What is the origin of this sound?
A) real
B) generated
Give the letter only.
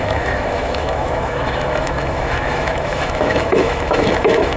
B